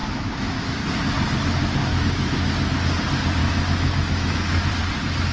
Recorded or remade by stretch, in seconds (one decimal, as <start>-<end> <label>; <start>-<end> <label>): 0.0-0.8 remade; 0.8-1.8 recorded; 1.8-2.7 remade; 2.7-3.4 recorded; 3.4-4.7 remade; 4.7-5.3 recorded